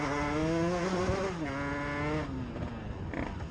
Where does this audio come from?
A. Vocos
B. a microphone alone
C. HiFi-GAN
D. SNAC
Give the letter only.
B